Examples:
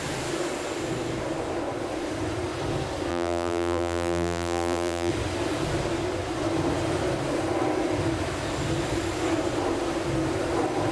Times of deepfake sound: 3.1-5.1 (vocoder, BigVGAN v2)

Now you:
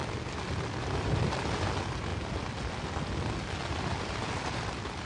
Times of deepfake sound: 1.3-2.1 (vocoder, BigVGAN v2); 4.0-5.1

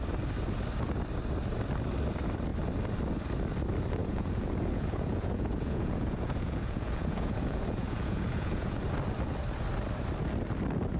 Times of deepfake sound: 4.0-8.8 (vocoder, Vocos)

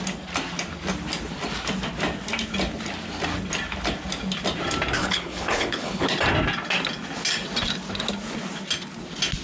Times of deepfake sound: 5.0-6.1 (codec, HILCodec)

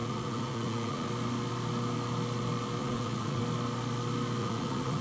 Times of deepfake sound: 0.0-1.1 (vocoder, Vocos); 2.8-3.4; 4.4-5.0

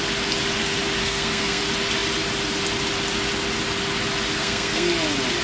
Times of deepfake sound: 1.0-1.6 (codec, SNAC); 4.4-4.9

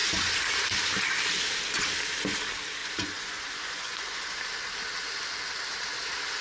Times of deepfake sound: 2.8-4.4 (vocoder, Vocos)

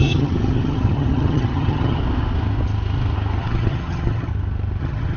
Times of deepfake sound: 0.0-2.0 (vocoder, HiFi-GAN); 3.4-4.3; 4.8-5.2